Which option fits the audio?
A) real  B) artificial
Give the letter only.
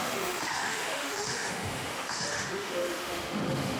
B